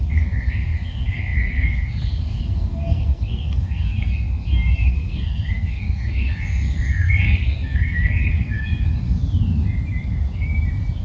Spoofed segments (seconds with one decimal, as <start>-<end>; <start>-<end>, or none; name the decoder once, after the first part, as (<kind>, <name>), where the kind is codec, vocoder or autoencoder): 0.0-8.9 (codec, SNAC)